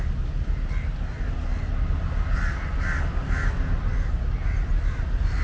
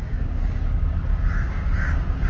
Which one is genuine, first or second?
first